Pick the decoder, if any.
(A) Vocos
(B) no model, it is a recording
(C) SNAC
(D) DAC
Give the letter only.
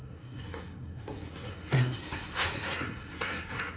C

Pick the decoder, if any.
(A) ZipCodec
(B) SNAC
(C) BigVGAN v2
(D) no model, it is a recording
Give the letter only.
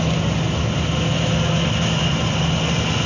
D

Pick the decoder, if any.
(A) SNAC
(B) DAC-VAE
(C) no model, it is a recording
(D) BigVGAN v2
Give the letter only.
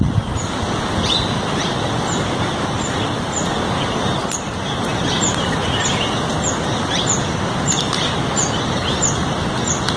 C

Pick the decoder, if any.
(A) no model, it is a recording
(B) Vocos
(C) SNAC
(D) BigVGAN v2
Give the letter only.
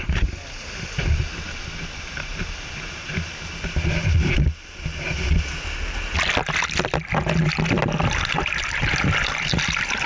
A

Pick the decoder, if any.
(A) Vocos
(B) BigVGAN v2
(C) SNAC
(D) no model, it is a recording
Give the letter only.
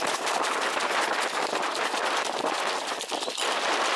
B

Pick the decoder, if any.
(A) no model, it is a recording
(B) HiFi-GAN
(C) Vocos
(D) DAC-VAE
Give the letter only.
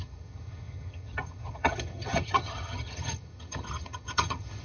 B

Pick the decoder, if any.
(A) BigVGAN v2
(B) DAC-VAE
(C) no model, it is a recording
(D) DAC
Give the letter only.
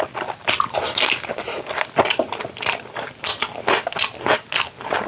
C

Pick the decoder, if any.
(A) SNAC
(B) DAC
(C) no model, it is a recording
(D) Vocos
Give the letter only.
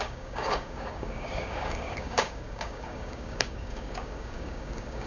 B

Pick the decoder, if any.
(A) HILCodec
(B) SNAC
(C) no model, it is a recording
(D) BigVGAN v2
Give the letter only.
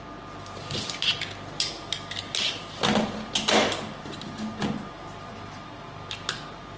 C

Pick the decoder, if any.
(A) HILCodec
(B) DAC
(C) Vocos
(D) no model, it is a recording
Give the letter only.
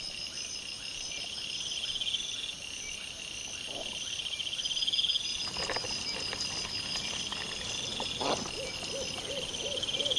D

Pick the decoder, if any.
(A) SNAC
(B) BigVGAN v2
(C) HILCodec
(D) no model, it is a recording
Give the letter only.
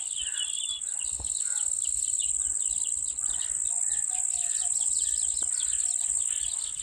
D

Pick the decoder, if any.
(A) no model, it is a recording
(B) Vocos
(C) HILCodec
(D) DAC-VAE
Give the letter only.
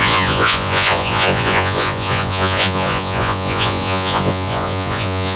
B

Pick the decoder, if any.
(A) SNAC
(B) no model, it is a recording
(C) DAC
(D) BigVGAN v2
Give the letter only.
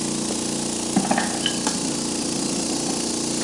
B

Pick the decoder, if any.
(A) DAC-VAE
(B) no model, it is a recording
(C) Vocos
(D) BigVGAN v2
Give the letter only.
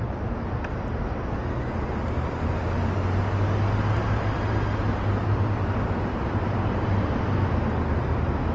B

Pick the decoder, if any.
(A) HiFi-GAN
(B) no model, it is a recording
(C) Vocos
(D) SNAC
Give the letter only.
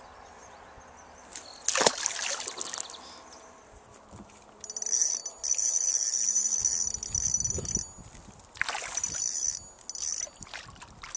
B